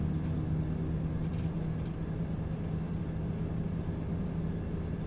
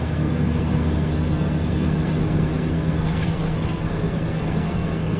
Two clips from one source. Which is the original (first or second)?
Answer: first